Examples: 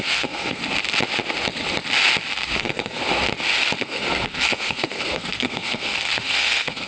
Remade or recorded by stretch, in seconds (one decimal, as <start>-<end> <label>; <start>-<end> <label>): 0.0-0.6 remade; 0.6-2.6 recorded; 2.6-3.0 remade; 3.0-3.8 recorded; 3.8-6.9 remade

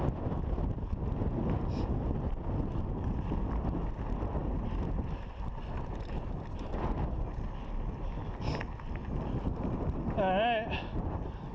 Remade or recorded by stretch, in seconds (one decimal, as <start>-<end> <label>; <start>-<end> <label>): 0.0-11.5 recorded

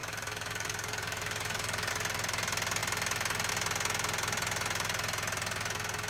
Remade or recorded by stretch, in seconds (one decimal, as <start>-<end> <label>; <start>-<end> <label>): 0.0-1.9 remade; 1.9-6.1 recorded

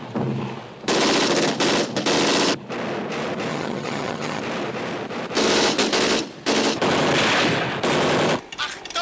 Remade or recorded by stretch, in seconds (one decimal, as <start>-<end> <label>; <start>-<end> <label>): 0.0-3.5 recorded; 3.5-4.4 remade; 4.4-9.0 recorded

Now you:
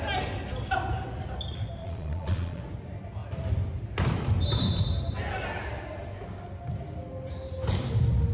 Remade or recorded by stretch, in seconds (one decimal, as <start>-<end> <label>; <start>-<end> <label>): 0.0-1.8 recorded; 1.8-2.6 remade; 2.6-8.3 recorded

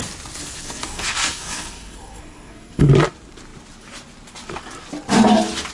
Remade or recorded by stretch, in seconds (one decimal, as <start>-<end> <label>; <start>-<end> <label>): 0.0-0.4 recorded; 0.4-2.9 remade; 2.9-5.7 recorded